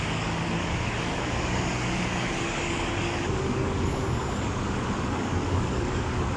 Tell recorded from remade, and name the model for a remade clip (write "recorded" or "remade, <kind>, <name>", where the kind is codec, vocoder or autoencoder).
remade, codec, DAC